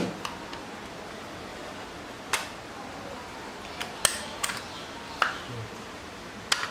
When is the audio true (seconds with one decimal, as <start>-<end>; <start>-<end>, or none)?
0.0-6.7